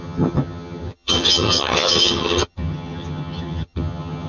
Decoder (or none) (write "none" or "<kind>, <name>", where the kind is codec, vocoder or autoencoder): vocoder, HiFi-GAN